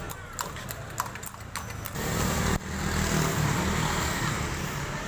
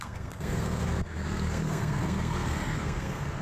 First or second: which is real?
first